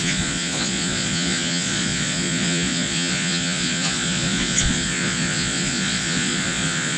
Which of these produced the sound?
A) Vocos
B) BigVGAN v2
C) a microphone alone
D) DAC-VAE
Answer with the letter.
A